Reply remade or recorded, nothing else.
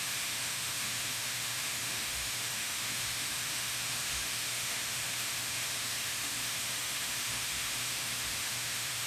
remade